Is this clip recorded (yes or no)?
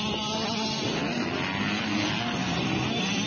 yes